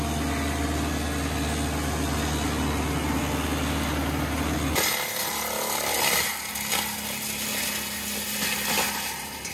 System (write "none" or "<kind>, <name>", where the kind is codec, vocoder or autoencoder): none